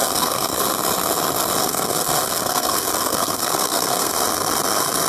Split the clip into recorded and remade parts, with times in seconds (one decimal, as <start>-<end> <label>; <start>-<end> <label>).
0.0-0.6 remade; 0.6-1.6 recorded; 1.6-4.1 remade; 4.1-5.1 recorded